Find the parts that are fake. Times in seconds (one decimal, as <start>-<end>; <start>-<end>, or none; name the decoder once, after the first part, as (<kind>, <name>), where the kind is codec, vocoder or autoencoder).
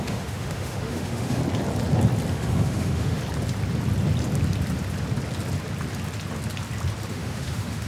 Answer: 0.0-1.4 (autoencoder, DAC-VAE); 2.3-3.2; 7.1-7.9